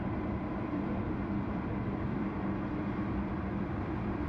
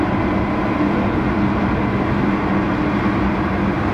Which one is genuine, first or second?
second